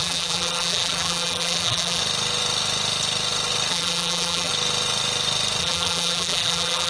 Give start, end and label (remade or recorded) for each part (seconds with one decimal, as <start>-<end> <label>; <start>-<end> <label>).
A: 0.0-2.0 remade; 2.0-3.7 recorded; 3.7-4.5 remade; 4.5-5.6 recorded; 5.6-6.9 remade